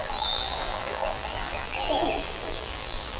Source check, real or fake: fake